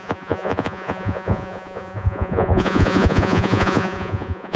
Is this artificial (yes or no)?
yes